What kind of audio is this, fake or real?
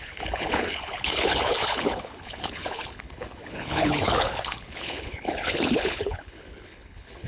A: fake